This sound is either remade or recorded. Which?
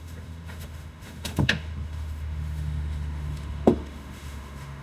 remade